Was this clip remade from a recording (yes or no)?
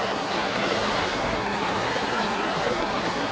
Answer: yes